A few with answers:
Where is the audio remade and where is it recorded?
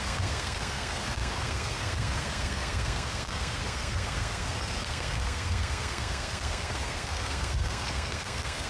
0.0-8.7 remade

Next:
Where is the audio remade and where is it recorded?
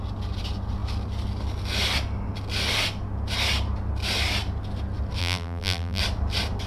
0.0-5.2 recorded; 5.2-6.0 remade; 6.0-6.7 recorded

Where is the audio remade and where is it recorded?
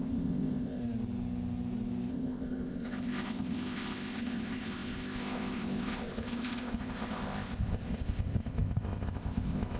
0.0-0.8 remade; 0.8-2.1 recorded; 2.1-9.8 remade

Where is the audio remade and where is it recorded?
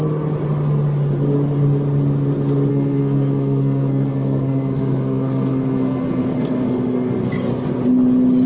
0.0-2.7 recorded; 2.7-7.5 remade; 7.5-8.5 recorded